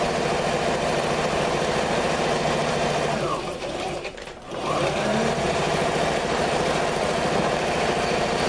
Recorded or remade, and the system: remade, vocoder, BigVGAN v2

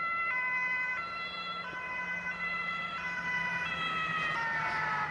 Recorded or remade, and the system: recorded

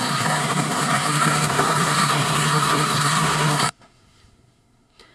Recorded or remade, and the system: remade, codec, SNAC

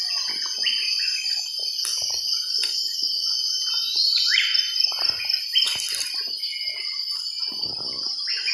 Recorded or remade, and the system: recorded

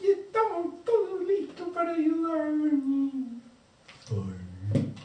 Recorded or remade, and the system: recorded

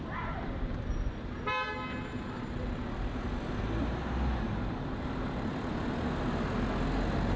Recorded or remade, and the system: recorded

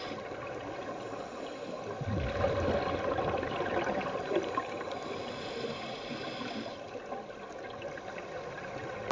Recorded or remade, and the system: recorded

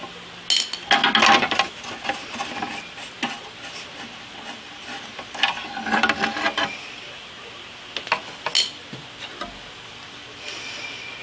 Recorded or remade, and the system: recorded